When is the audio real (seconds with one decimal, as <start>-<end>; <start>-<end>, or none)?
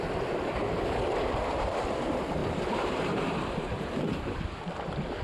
0.0-2.4; 4.6-5.2